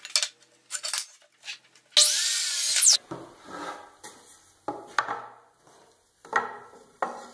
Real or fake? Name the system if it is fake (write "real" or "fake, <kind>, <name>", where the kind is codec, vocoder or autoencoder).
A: real